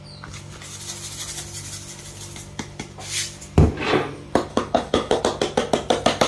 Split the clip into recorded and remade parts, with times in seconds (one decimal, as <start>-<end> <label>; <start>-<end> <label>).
0.0-4.5 recorded; 4.5-5.2 remade; 5.2-6.3 recorded